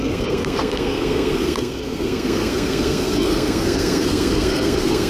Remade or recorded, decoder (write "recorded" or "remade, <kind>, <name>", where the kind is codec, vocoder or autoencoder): remade, codec, SNAC